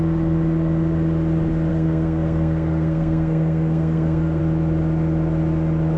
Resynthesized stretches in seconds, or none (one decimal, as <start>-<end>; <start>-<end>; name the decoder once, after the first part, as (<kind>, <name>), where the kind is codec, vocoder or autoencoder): 1.7-4.4 (codec, SNAC)